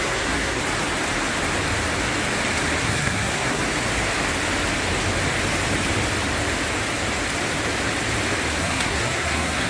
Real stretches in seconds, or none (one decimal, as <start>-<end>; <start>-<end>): 0.6-2.8; 3.6-8.6